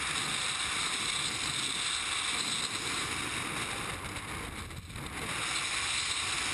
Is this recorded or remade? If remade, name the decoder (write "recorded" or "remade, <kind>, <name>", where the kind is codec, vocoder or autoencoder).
recorded